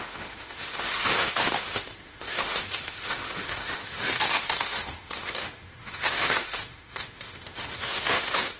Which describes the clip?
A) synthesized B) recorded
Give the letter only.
A